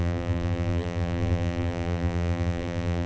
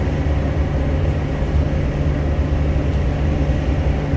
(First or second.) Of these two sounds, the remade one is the first